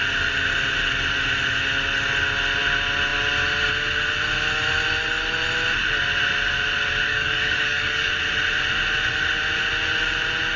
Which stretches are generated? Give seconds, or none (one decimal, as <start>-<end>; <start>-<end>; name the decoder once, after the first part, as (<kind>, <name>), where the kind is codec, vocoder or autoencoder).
7.1-8.1 (codec, DAC)